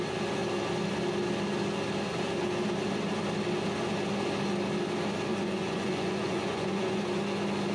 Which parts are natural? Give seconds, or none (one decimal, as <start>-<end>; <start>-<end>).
0.0-5.3; 7.0-7.7